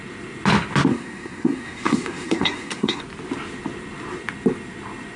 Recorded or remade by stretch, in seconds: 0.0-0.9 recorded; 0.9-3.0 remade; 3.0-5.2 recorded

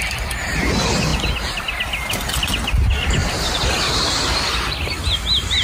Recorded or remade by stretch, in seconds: 0.0-3.2 recorded; 3.2-4.1 remade; 4.1-5.6 recorded

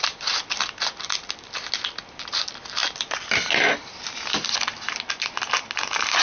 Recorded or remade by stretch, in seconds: 0.0-6.2 recorded

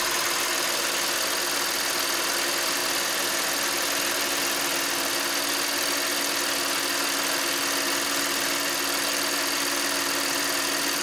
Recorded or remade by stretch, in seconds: 0.0-11.0 recorded

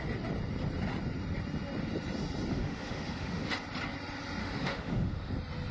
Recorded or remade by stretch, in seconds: 0.0-2.5 recorded; 2.5-3.5 remade; 3.5-4.4 recorded; 4.4-5.3 remade; 5.3-5.7 recorded

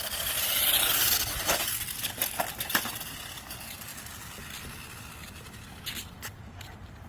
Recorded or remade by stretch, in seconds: 0.0-7.1 recorded

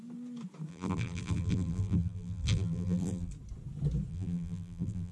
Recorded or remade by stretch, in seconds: 0.0-0.7 recorded; 0.7-3.3 remade; 3.3-4.1 recorded; 4.1-5.1 remade